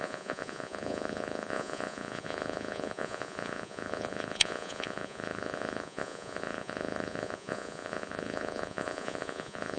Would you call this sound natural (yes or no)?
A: no